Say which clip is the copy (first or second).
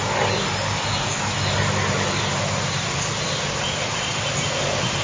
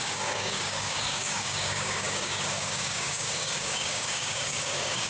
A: second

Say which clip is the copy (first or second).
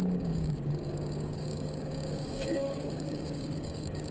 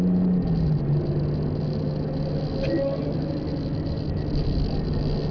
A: first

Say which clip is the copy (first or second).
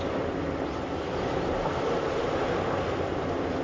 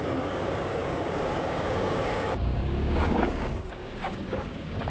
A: second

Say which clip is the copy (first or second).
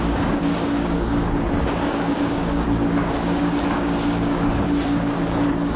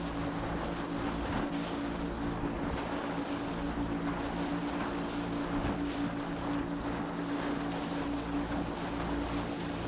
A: first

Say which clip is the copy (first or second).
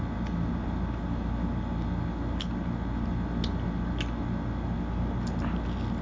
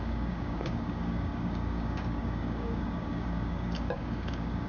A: second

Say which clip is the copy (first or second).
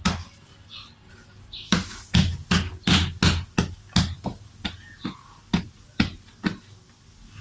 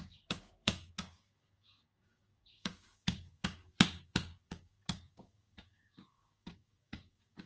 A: second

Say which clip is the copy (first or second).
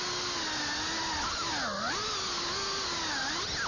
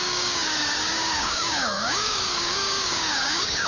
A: second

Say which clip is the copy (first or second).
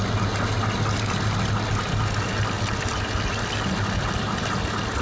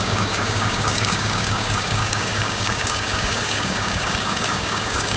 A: second